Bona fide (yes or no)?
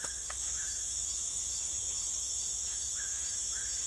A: no